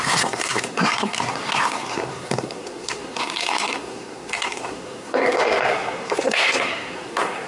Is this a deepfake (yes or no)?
yes